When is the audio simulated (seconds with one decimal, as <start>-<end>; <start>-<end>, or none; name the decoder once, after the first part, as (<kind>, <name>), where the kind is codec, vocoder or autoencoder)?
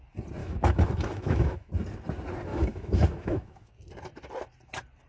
0.4-1.7 (autoencoder, DAC-VAE); 2.5-3.7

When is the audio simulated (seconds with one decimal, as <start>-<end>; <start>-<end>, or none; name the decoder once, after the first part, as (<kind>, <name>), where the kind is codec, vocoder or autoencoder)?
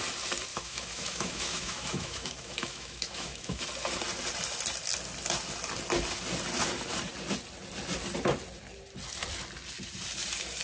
0.5-3.6 (autoencoder, DAC-VAE)